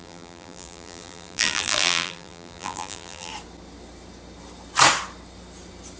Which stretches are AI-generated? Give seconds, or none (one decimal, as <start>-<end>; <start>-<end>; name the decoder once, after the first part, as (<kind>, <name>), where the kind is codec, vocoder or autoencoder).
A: 0.0-3.3 (vocoder, BigVGAN v2)